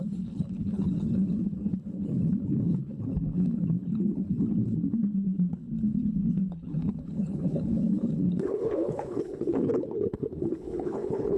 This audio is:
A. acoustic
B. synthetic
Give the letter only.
B